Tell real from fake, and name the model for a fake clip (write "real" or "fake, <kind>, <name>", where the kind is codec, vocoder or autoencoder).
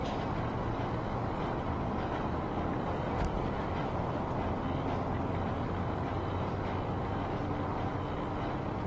real